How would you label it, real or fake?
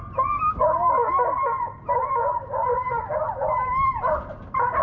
real